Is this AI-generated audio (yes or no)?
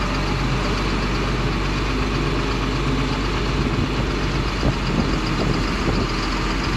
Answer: no